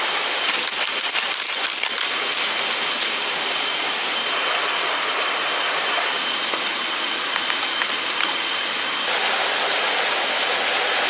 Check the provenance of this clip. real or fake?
real